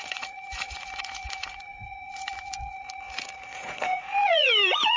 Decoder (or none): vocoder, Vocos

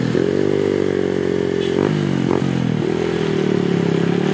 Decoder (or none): none